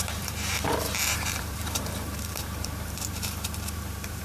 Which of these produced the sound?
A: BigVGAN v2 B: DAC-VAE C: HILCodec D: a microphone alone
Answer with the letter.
A